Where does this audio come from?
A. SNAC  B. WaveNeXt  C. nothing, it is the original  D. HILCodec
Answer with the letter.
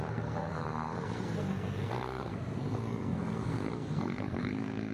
A